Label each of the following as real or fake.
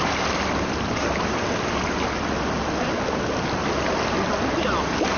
real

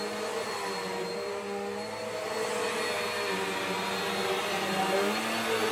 real